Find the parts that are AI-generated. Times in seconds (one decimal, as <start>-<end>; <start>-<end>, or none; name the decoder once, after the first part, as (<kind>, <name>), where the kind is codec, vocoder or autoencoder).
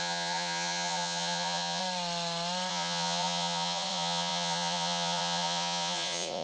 0.0-1.8 (vocoder, Vocos); 2.7-6.4